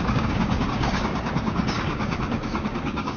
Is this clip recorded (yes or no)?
no